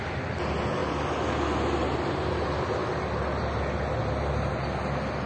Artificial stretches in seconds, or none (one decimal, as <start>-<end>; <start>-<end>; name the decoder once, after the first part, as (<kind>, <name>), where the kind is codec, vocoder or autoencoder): none

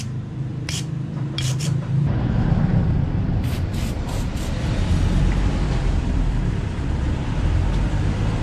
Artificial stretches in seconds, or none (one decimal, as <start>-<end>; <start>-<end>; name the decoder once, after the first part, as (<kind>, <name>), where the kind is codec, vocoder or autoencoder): 0.0-8.4 (vocoder, BigVGAN v2)

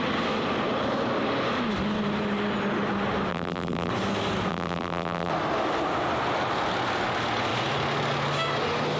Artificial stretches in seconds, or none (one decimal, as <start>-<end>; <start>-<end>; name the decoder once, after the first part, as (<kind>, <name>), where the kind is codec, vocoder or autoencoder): 3.3-3.9 (vocoder, BigVGAN v2); 4.5-5.3

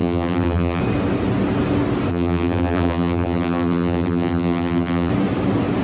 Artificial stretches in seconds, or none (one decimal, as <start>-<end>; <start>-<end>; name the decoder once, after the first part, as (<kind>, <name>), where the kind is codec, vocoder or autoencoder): 0.0-0.8 (vocoder, BigVGAN v2); 2.1-5.1

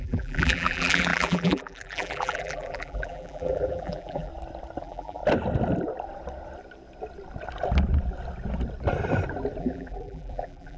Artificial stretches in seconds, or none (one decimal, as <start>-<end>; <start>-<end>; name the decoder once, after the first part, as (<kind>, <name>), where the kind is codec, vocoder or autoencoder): 0.0-4.3 (vocoder, BigVGAN v2); 4.8-5.2; 9.6-10.8

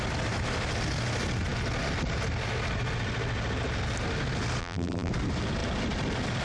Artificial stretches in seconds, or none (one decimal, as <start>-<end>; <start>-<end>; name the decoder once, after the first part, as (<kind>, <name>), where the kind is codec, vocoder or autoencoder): 4.6-5.1 (vocoder, BigVGAN v2)